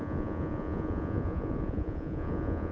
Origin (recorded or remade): remade